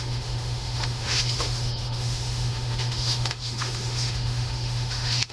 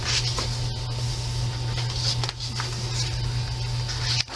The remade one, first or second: first